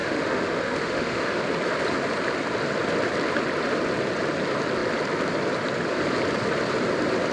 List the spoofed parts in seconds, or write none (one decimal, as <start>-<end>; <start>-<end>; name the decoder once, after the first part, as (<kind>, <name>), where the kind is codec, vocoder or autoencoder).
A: 0.0-1.4 (autoencoder, DAC-VAE)